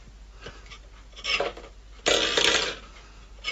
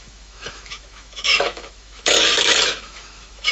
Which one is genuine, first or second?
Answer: first